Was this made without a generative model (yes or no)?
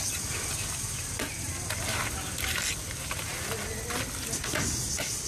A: yes